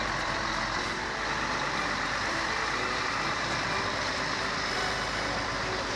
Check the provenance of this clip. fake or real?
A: fake